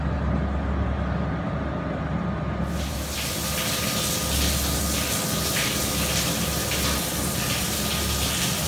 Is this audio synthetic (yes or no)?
no